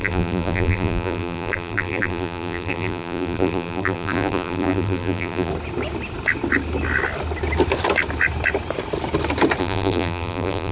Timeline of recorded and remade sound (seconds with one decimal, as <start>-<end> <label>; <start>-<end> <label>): 0.0-5.5 remade; 5.5-9.6 recorded; 9.6-10.7 remade